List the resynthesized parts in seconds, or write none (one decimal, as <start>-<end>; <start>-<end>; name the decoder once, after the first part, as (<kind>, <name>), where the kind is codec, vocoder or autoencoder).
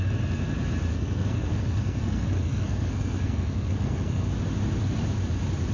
0.9-4.3 (codec, SNAC)